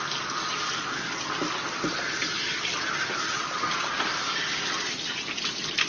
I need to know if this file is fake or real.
real